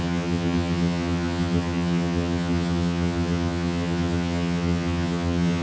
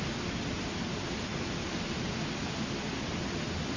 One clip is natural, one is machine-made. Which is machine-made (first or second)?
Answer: first